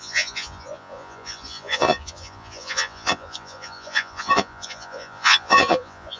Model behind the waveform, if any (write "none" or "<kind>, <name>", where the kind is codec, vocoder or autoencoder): vocoder, Vocos